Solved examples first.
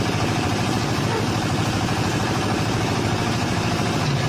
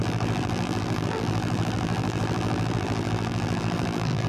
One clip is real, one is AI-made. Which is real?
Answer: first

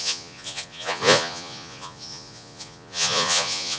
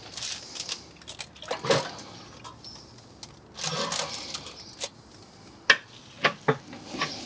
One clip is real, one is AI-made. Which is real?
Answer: second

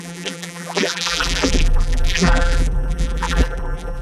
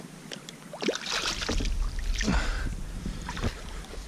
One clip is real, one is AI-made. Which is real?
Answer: second